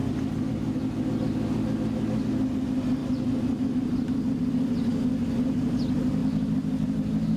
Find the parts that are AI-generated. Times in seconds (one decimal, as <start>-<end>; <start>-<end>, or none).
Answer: none